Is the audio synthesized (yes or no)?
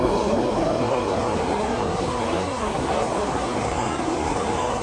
yes